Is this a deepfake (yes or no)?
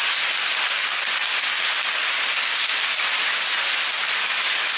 no